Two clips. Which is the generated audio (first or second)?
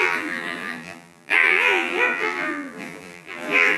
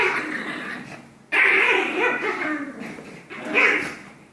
first